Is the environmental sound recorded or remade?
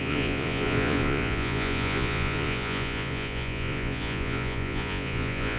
remade